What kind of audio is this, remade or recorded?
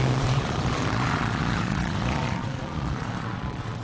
remade